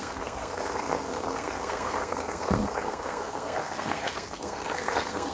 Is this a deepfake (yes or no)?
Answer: yes